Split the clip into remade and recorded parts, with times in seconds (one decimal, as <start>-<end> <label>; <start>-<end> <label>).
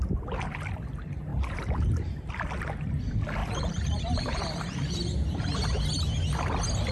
0.0-1.3 recorded; 1.3-2.3 remade; 2.3-3.4 recorded; 3.4-5.8 remade; 5.8-6.9 recorded